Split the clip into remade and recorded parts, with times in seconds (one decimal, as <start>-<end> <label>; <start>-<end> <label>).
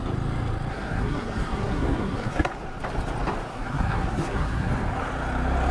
0.0-0.7 recorded; 0.7-2.5 remade; 2.5-3.5 recorded; 3.5-4.7 remade; 4.7-5.7 recorded